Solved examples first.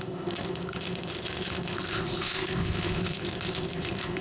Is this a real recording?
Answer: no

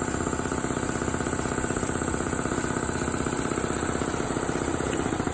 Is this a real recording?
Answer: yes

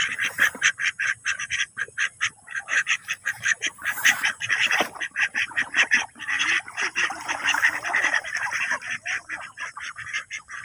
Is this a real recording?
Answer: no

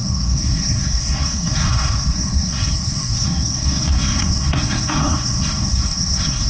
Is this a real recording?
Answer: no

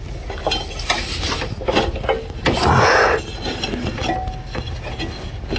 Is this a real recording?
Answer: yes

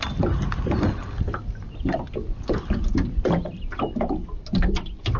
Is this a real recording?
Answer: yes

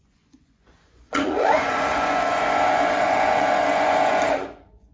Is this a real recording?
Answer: no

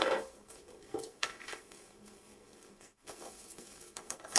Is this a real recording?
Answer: no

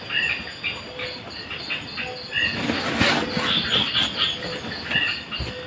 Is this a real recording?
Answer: yes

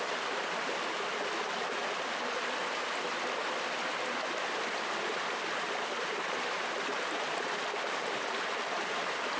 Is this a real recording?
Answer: yes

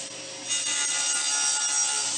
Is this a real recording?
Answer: yes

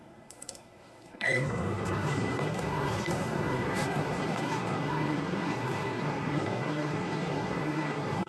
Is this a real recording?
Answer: no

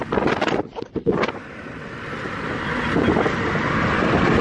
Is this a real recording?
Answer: yes